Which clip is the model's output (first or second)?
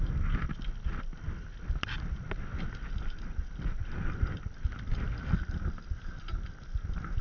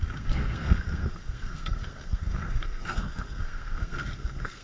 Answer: second